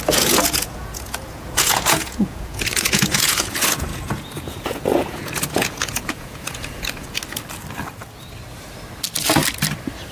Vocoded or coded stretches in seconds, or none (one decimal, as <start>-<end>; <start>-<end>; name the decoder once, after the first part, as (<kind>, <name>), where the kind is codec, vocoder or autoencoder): 0.0-7.2 (vocoder, Vocos)